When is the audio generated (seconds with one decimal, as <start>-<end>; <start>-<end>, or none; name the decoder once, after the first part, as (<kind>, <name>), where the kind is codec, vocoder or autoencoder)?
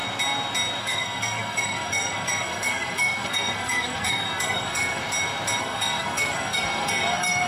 0.8-5.0 (codec, SNAC); 5.6-7.5